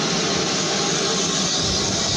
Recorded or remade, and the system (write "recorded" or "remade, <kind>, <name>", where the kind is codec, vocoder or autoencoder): recorded